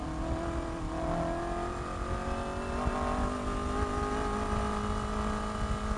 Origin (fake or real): real